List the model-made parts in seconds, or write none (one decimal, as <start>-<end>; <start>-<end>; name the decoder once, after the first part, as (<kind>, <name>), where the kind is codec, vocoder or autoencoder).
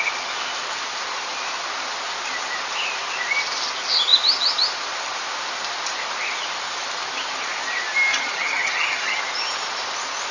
8.1-9.2 (vocoder, HiFi-GAN)